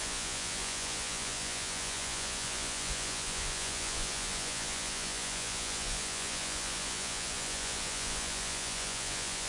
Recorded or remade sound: remade